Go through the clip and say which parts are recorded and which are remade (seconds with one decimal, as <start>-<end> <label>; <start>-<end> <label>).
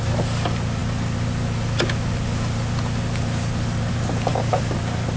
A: 0.0-5.2 recorded